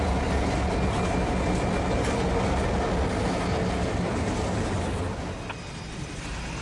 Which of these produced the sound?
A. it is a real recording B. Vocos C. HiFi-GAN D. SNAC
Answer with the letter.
A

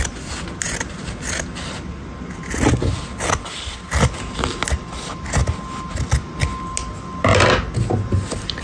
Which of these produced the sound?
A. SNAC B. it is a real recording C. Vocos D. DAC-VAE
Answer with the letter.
B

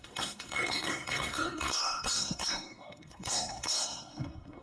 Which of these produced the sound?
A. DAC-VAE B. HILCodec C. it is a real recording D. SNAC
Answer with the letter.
D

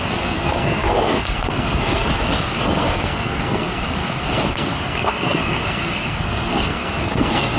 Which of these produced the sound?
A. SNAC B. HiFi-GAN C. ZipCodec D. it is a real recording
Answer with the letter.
A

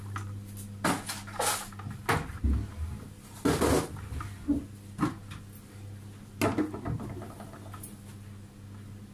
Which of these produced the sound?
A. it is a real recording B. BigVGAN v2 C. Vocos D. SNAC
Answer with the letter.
A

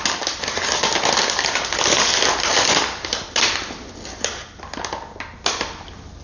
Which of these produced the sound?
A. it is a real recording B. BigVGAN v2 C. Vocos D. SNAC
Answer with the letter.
A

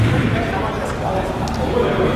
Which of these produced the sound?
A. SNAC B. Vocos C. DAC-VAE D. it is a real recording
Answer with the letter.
D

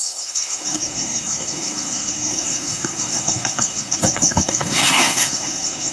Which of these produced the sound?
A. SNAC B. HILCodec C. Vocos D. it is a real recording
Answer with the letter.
A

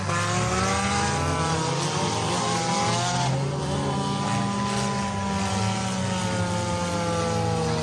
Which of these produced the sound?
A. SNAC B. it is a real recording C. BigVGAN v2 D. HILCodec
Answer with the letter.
B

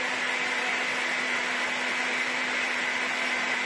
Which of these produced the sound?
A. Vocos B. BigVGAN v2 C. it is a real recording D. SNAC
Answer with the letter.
C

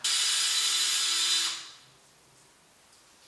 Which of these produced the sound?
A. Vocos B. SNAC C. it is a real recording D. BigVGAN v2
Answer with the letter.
C